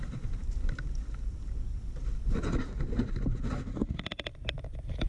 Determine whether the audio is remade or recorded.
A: recorded